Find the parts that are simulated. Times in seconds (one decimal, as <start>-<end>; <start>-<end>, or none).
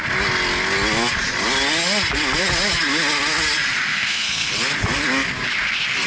3.9-4.5